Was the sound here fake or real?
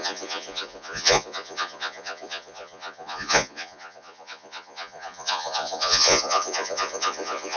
fake